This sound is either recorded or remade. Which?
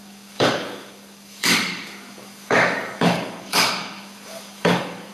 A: remade